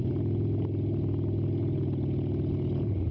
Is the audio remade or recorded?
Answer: recorded